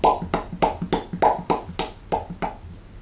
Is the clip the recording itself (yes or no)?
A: yes